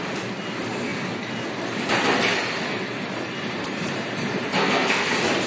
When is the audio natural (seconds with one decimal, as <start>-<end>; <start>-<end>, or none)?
0.0-4.6; 5.1-5.5